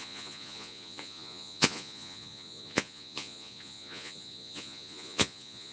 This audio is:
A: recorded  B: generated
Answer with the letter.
B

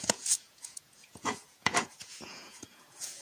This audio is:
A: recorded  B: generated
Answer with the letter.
B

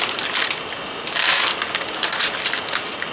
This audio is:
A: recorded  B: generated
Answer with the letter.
A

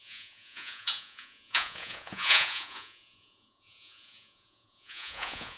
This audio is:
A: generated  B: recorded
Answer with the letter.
A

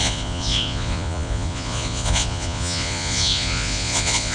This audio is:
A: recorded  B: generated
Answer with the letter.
B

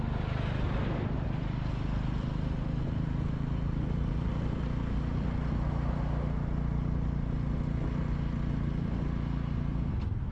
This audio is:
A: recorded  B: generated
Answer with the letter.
A